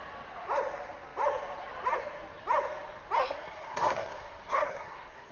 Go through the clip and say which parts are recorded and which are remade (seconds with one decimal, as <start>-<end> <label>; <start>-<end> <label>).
0.0-3.2 recorded; 3.2-5.3 remade